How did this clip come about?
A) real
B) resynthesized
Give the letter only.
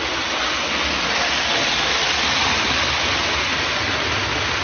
A